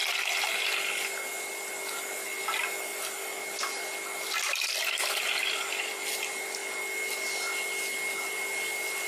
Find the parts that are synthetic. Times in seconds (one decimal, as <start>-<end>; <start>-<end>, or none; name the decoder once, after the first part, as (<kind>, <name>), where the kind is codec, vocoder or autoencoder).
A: none